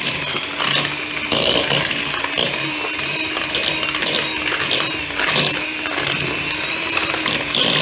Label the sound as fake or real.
fake